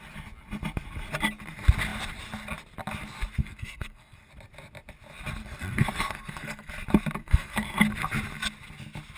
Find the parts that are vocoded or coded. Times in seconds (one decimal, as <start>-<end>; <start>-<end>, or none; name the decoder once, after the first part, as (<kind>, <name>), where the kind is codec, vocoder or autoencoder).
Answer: 3.4-4.3 (codec, SNAC); 5.4-6.7; 7.2-7.8

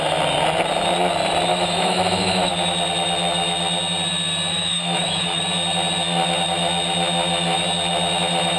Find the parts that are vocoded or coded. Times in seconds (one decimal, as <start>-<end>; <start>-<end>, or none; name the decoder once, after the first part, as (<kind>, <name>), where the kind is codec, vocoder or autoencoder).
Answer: 1.5-2.5 (autoencoder, DAC-VAE); 4.5-5.4

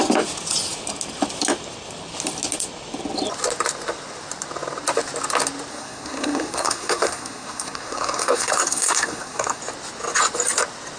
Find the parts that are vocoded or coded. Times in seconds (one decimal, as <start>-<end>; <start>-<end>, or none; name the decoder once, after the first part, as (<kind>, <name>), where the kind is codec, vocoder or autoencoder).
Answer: 5.7-9.6 (codec, SNAC)

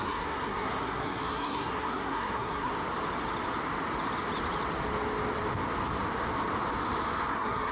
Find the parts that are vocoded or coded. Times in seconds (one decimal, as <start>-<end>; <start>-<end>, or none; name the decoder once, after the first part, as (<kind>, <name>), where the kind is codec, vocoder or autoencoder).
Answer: 0.0-2.7 (codec, SNAC); 7.3-7.7

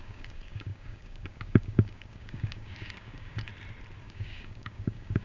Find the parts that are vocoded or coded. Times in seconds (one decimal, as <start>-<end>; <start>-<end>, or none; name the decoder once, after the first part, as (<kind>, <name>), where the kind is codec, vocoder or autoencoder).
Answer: 0.0-3.5 (codec, DAC); 4.0-5.2

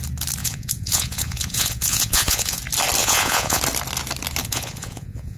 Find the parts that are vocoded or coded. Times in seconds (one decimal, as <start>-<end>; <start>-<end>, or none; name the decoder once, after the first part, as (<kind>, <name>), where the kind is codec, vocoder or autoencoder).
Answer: 0.4-2.6 (vocoder, Vocos); 3.0-3.6; 4.4-5.4